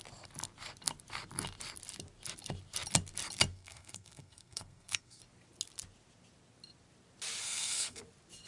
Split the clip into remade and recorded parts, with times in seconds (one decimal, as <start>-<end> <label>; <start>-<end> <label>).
0.0-3.5 recorded; 3.5-5.2 remade; 5.2-7.4 recorded; 7.4-8.0 remade; 8.0-8.5 recorded